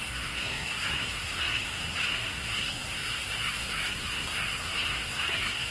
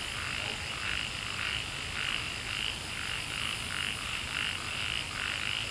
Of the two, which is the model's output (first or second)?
first